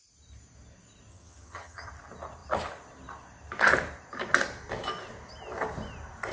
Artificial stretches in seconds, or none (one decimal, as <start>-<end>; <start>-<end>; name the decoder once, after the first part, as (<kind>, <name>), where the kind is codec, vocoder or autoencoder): 1.1-1.9 (vocoder, HiFi-GAN)